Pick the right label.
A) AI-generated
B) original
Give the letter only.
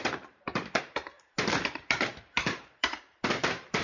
A